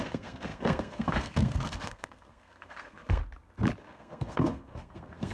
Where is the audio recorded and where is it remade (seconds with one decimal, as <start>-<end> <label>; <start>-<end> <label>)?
0.0-3.2 remade; 3.2-3.8 recorded; 3.8-5.3 remade